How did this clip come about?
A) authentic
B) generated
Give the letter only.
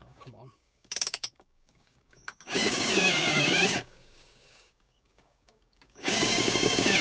B